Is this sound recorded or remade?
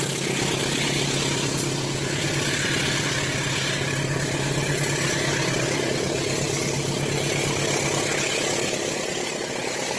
recorded